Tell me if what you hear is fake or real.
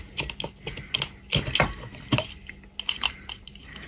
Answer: real